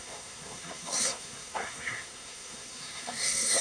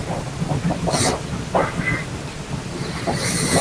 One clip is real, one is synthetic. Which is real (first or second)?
second